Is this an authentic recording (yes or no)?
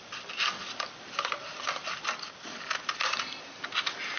yes